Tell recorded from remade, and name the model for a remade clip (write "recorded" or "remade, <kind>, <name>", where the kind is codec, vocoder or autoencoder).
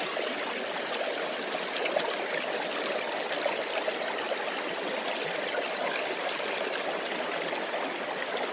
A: recorded